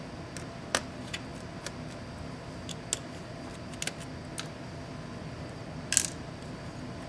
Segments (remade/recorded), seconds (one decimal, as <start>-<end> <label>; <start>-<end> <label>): 0.0-7.1 recorded